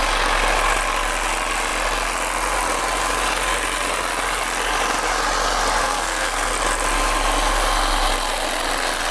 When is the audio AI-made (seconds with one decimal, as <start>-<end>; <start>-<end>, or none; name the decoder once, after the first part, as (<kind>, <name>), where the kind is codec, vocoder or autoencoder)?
5.8-6.5 (codec, SNAC)